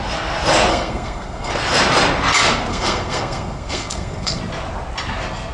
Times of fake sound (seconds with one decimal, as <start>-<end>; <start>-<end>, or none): 0.7-1.5; 2.7-4.4